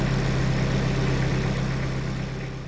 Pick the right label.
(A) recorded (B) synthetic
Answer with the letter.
A